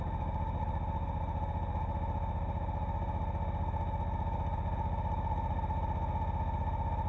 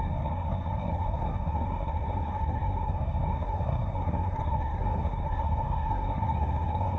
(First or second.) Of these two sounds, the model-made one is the second